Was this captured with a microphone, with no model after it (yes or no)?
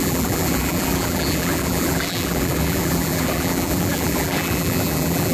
no